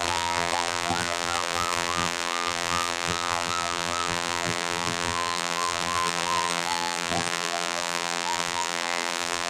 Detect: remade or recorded remade